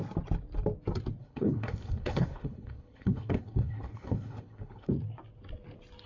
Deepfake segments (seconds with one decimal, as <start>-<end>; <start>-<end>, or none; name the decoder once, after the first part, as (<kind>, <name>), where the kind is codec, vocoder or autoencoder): 1.2-4.9 (codec, HILCodec)

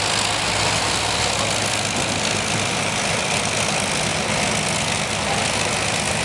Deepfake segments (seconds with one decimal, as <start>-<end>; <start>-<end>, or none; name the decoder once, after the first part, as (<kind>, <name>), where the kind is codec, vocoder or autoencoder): none

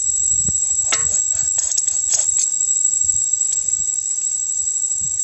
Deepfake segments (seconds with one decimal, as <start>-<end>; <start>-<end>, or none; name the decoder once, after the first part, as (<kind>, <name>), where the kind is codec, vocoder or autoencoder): 1.0-4.1 (vocoder, Vocos)

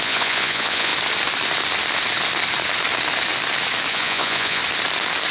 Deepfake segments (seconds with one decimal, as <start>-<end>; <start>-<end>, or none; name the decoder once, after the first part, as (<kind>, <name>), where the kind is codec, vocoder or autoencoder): 0.0-0.9 (vocoder, Vocos); 3.9-4.6